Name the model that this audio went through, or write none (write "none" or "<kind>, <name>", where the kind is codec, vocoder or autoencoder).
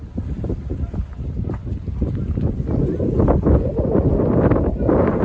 none